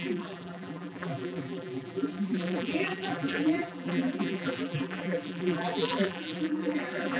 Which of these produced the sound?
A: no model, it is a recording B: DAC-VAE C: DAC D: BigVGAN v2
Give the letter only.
D